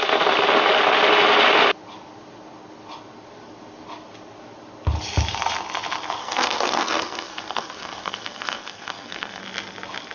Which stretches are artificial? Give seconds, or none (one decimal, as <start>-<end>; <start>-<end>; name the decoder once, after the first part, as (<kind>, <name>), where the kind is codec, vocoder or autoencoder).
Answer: 6.2-9.4 (codec, SNAC)